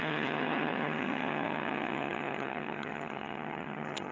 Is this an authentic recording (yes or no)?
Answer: no